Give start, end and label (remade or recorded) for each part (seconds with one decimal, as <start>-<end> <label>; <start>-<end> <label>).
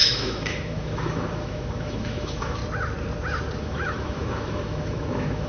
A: 0.0-2.6 remade; 2.6-3.6 recorded; 3.6-5.5 remade